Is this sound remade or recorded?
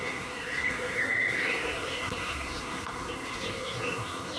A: remade